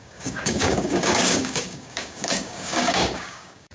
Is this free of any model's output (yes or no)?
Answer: no